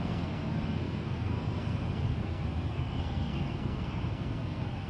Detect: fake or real fake